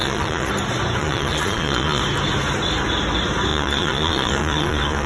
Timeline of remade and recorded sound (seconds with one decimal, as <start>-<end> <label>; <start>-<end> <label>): 0.0-0.5 remade; 0.5-1.0 recorded; 1.0-2.0 remade; 2.0-3.5 recorded; 3.5-5.1 remade